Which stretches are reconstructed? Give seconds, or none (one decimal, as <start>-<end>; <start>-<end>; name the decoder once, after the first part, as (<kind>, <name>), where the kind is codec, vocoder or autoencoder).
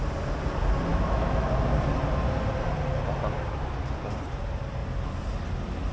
0.9-1.5 (autoencoder, DAC-VAE)